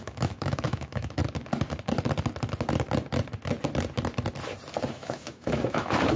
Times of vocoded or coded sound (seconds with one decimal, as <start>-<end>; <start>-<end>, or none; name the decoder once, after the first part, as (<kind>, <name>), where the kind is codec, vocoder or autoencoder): 0.0-1.2 (autoencoder, DAC-VAE); 4.9-6.2